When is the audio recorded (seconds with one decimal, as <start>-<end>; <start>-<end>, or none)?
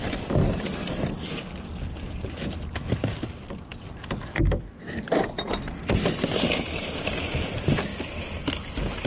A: 0.0-9.1